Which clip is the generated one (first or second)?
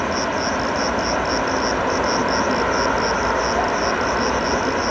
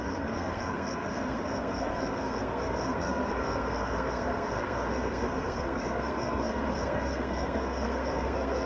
second